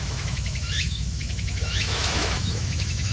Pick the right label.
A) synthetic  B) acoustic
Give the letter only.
A